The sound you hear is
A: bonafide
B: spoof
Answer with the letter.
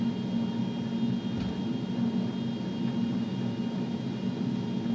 A